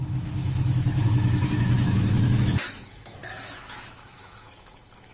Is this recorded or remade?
remade